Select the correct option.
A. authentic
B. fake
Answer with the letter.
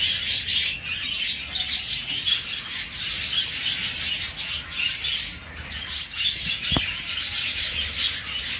A